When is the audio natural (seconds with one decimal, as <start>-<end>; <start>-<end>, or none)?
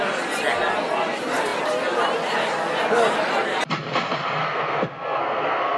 0.0-4.4